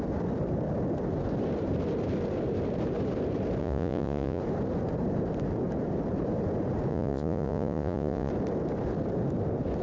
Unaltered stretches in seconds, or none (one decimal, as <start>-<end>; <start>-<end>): 0.0-3.6; 4.4-6.9; 8.3-9.8